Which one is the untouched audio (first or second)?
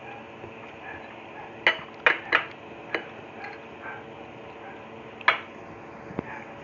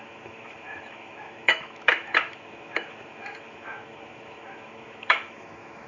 first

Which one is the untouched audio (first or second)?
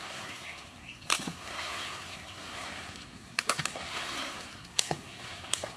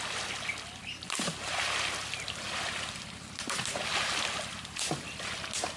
second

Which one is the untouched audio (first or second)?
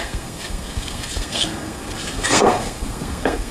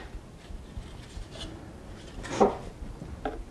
second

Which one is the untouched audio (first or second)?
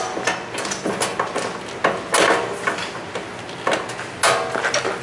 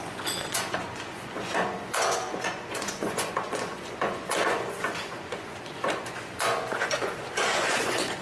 first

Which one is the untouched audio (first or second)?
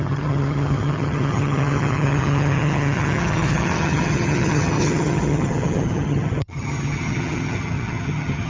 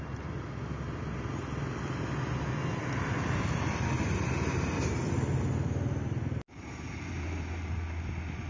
second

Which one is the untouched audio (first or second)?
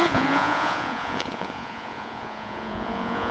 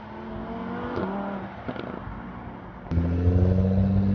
second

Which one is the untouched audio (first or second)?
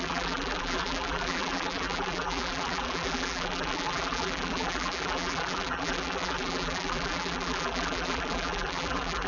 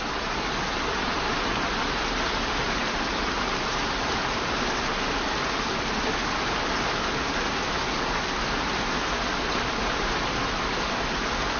second